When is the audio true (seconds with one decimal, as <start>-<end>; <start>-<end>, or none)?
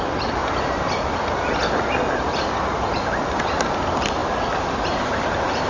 0.0-0.4; 3.5-5.7